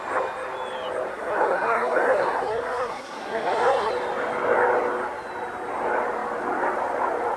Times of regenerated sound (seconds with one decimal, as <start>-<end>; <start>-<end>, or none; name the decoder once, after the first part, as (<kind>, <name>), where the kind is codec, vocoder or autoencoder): 1.1-3.9 (codec, SNAC)